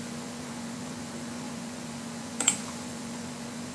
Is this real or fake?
fake